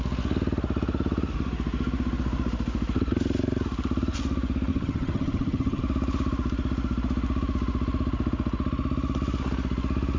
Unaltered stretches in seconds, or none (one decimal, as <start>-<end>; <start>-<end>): 0.0-4.7; 5.8-10.2